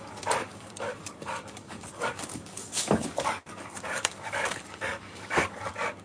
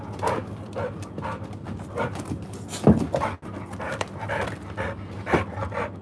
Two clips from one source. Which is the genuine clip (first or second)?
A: second